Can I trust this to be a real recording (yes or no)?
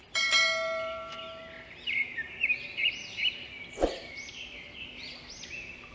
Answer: no